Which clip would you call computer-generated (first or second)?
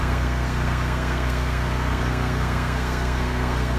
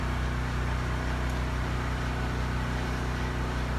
first